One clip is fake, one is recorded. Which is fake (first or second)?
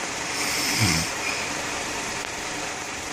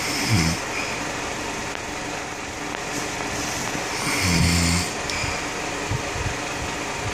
first